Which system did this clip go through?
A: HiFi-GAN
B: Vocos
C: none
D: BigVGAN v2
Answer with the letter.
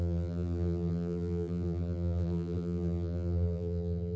D